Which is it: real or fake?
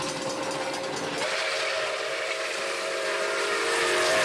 real